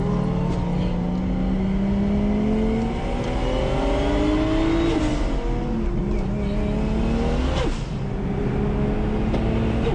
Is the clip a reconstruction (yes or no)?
no